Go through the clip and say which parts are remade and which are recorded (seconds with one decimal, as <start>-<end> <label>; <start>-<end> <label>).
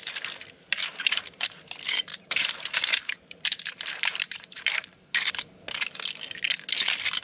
0.0-2.1 recorded; 2.1-4.6 remade; 4.6-7.2 recorded